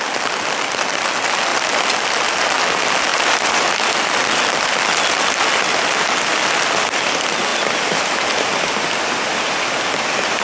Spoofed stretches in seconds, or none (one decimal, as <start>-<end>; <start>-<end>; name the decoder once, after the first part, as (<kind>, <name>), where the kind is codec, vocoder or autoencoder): 3.1-3.9 (vocoder, BigVGAN v2)